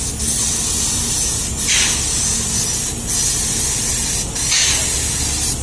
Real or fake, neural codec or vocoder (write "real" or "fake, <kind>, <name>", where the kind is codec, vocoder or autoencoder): real